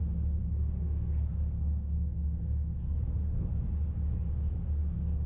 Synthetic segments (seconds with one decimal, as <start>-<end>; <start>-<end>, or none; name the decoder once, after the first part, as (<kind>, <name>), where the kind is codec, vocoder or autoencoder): 0.4-3.6 (codec, SNAC); 4.5-5.3